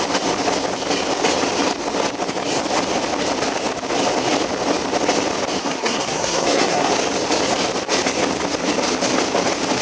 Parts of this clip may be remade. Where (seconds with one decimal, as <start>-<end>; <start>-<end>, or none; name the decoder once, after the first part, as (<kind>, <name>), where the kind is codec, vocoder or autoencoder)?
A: 5.6-6.9 (codec, SNAC)